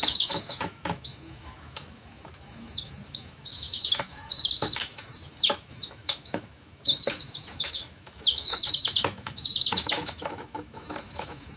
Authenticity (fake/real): fake